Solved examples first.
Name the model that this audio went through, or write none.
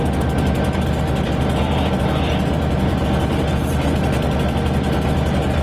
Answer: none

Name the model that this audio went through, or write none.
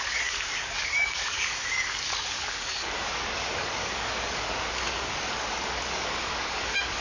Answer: codec, DAC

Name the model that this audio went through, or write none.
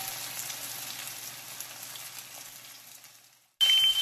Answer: none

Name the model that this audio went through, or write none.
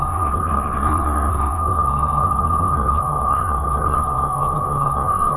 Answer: codec, SNAC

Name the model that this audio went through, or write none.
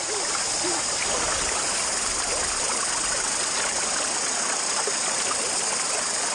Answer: none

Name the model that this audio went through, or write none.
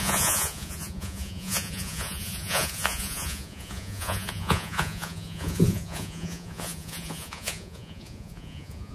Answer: vocoder, Vocos